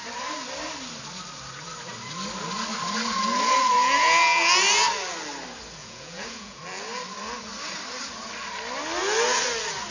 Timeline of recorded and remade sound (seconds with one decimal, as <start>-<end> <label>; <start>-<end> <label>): 0.0-5.8 recorded; 5.8-6.6 remade; 6.6-9.9 recorded